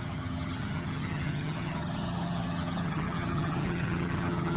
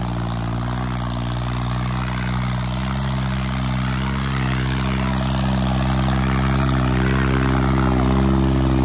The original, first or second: second